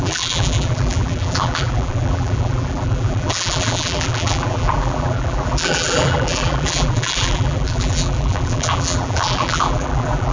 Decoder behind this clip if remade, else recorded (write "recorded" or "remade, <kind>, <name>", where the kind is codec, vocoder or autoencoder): remade, vocoder, BigVGAN v2